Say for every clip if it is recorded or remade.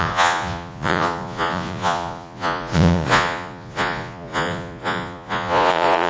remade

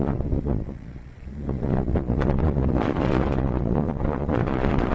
remade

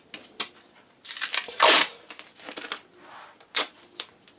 recorded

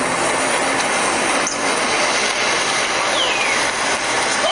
recorded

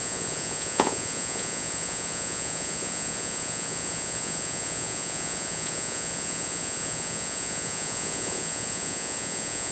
remade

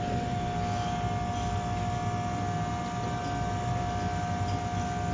recorded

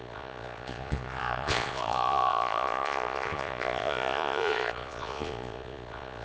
remade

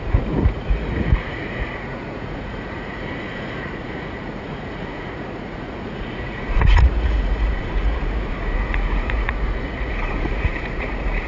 remade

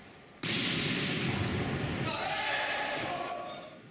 recorded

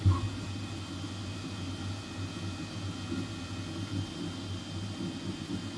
recorded